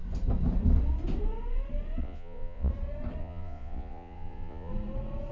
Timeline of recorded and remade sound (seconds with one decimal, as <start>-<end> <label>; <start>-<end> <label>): 0.0-2.0 recorded; 2.0-2.7 remade; 2.7-3.2 recorded; 3.2-4.7 remade; 4.7-5.3 recorded